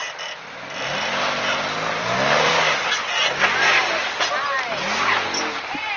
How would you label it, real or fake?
real